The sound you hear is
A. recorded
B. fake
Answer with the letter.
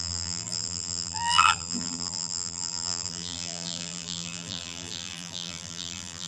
B